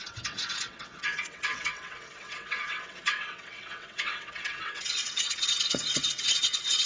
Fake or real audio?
fake